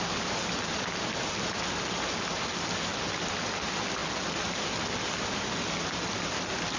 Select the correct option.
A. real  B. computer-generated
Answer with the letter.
A